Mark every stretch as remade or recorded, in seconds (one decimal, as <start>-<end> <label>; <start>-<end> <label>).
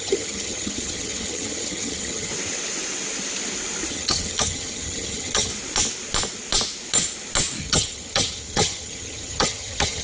0.0-2.3 remade; 2.3-3.9 recorded; 3.9-5.5 remade; 5.5-7.6 recorded; 7.6-10.0 remade